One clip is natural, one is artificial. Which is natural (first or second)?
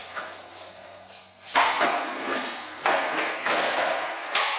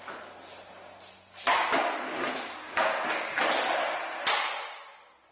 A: second